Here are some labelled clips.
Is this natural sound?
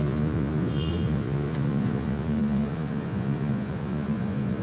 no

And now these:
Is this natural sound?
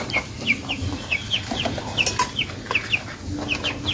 yes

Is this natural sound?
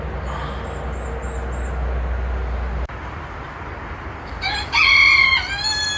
yes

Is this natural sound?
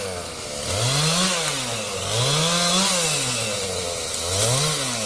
yes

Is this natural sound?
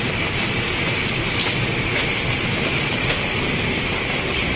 yes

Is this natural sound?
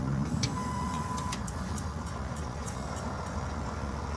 no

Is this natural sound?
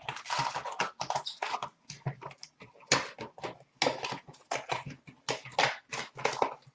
yes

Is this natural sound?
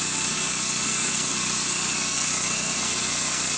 no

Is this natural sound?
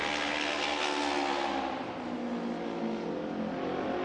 yes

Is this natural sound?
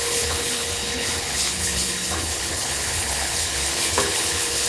no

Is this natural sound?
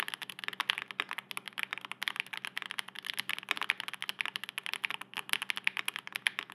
yes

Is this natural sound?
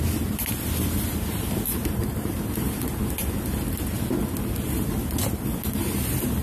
yes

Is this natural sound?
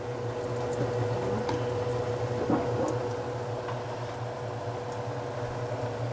yes